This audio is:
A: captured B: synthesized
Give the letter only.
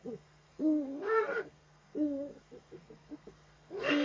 B